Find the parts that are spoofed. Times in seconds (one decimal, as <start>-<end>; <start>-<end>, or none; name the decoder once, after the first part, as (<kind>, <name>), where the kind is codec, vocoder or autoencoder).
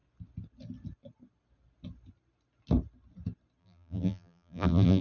3.6-5.0 (vocoder, BigVGAN v2)